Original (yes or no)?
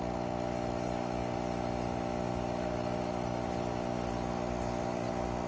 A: yes